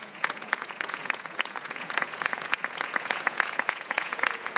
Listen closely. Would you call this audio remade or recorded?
remade